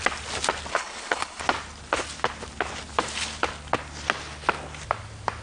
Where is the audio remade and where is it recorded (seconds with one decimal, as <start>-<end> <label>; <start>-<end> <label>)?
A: 0.0-0.7 recorded; 0.7-1.4 remade; 1.4-5.4 recorded